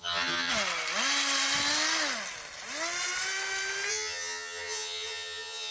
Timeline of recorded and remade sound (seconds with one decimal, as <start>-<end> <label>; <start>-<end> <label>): 0.0-0.5 remade; 0.5-3.9 recorded; 3.9-5.7 remade

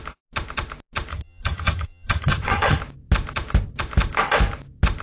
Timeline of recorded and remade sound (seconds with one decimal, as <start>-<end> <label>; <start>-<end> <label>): 0.0-1.1 recorded; 1.1-2.8 remade; 2.8-5.0 recorded

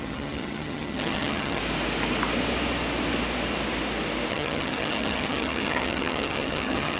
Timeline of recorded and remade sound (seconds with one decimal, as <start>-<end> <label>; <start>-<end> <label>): 0.0-1.6 remade; 1.6-4.3 recorded; 4.3-7.0 remade

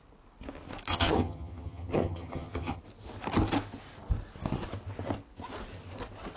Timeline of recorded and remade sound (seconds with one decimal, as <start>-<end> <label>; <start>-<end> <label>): 0.0-0.9 recorded; 0.9-2.8 remade; 2.8-6.4 recorded

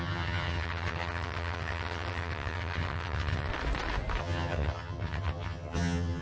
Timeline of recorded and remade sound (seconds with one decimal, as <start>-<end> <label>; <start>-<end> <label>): 0.0-3.5 remade; 3.5-4.2 recorded; 4.2-6.2 remade

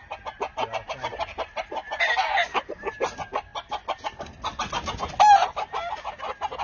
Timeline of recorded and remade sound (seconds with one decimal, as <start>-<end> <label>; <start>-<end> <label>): 0.0-6.6 recorded